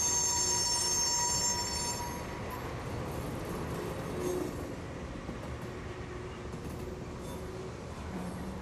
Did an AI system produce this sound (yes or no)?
no